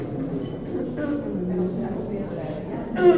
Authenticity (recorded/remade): recorded